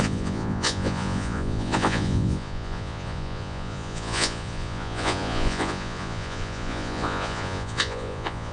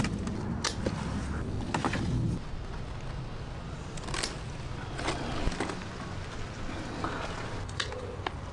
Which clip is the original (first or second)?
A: second